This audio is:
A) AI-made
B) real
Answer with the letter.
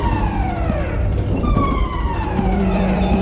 A